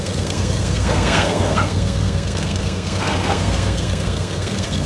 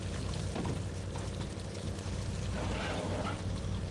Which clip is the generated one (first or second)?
first